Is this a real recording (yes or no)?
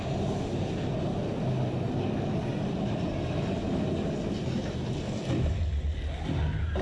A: yes